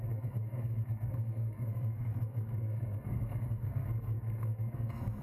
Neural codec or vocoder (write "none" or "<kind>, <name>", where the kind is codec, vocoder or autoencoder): codec, SNAC